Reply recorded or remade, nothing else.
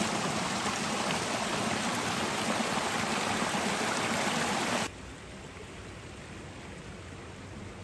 recorded